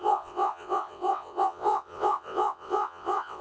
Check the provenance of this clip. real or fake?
fake